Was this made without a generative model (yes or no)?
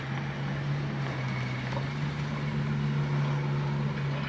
yes